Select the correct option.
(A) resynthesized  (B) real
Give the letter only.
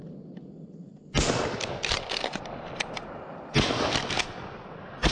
B